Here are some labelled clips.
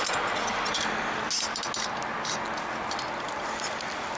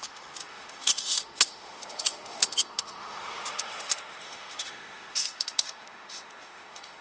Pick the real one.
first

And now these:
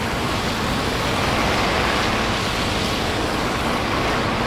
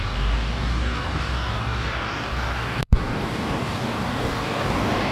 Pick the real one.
first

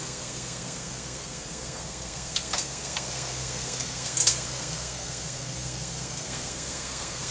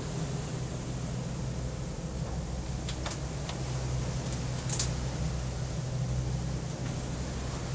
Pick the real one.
second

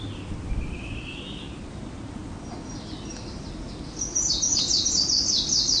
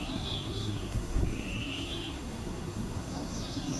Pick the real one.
first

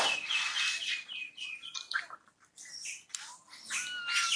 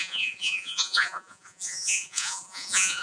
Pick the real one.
first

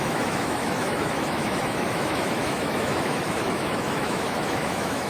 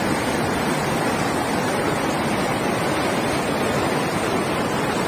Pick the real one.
second